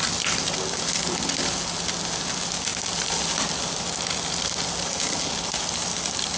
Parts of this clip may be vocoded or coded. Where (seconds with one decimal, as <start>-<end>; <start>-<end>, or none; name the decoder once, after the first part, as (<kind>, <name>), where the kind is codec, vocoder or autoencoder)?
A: none